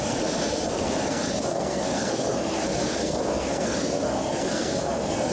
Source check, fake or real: fake